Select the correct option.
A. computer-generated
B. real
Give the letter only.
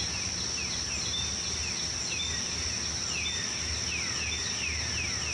B